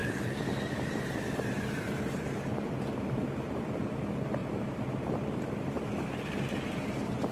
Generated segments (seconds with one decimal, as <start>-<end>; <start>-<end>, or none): 0.8-7.3